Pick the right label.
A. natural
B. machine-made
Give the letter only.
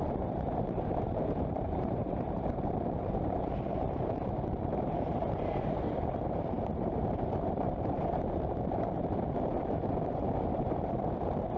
B